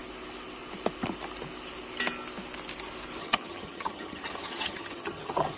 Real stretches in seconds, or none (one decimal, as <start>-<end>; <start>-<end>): 0.0-3.2